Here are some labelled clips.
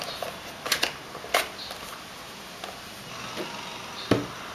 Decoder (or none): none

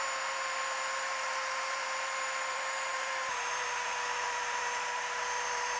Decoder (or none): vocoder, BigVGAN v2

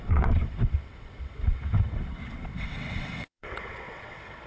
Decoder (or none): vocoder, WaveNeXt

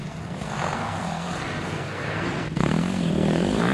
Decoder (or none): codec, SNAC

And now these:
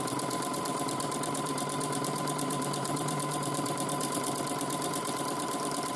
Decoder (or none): vocoder, BigVGAN v2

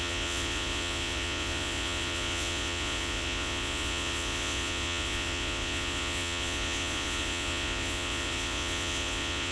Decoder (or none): vocoder, Vocos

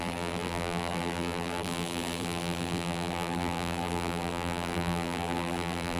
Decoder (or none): vocoder, BigVGAN v2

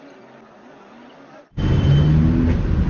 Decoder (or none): none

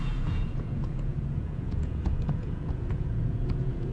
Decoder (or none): vocoder, Vocos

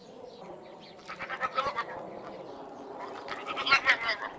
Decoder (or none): none